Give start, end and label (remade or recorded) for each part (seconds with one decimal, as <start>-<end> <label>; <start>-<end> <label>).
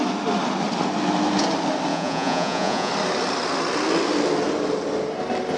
0.0-1.9 recorded; 1.9-2.9 remade; 2.9-5.6 recorded